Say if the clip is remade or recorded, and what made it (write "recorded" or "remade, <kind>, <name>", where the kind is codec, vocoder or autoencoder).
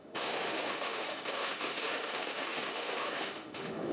remade, autoencoder, DAC-VAE